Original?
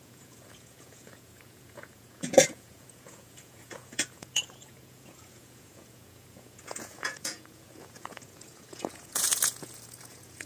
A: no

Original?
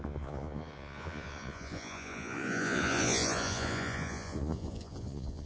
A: no